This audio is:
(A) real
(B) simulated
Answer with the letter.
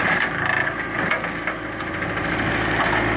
A